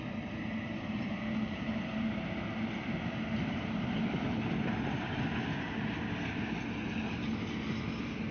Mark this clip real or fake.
real